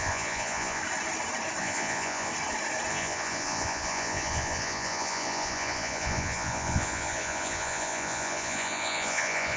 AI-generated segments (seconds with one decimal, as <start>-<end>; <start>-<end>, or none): 0.0-0.8; 1.6-2.3; 2.9-9.6